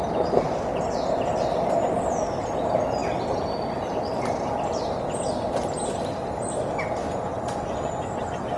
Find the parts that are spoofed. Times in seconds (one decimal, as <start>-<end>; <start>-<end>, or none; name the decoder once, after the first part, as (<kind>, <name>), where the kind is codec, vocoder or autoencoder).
7.0-7.9 (vocoder, Vocos)